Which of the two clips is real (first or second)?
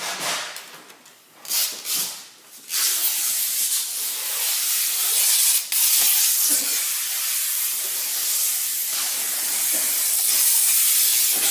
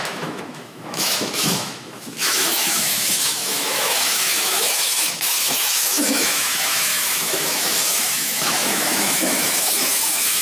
first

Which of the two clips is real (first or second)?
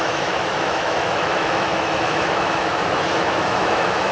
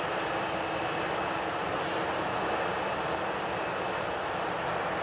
second